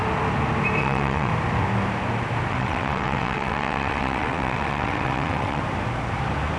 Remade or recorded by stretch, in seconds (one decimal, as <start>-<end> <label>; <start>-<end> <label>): 0.0-0.8 recorded; 0.8-1.3 remade; 1.3-2.5 recorded; 2.5-5.6 remade; 5.6-6.6 recorded